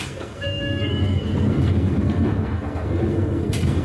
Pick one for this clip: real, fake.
fake